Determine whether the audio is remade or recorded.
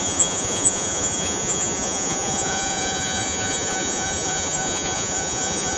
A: remade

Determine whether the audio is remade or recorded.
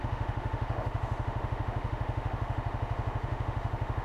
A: remade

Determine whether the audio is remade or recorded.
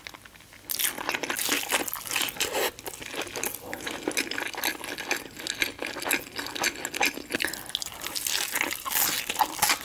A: recorded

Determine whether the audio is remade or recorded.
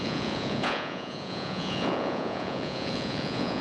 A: remade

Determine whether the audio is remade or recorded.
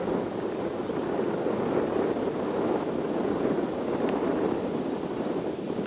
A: recorded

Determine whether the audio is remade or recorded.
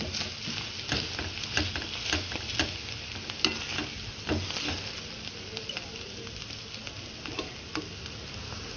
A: recorded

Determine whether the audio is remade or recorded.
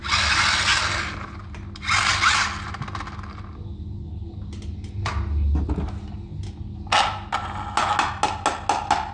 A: recorded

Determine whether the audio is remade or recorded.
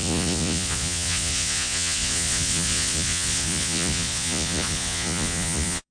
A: remade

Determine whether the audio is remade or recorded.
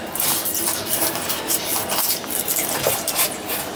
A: remade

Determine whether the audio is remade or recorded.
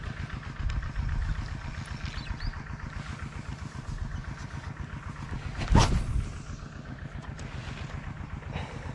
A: recorded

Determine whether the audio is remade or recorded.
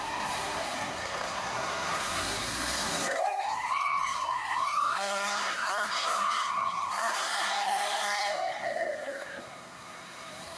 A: remade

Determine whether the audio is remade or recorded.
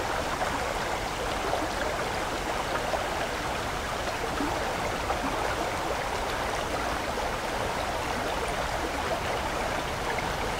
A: recorded